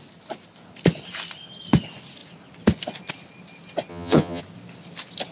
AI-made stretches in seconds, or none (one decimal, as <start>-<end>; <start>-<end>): 3.9-4.4